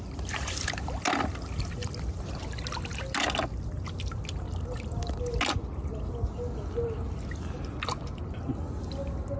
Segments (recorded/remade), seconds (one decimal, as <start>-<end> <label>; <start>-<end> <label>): 0.0-9.4 recorded